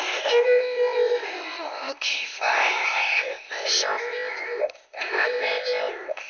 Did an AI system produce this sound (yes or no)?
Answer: yes